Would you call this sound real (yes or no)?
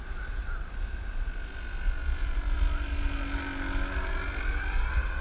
yes